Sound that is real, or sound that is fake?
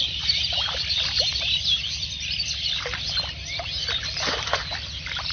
real